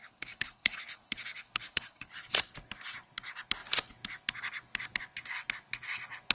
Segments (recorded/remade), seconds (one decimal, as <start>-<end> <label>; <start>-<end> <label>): 0.0-2.1 remade; 2.1-6.3 recorded